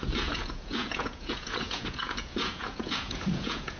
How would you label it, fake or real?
fake